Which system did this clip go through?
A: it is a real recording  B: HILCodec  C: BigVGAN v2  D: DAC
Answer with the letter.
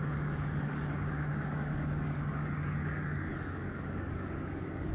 D